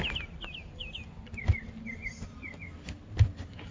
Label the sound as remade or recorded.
recorded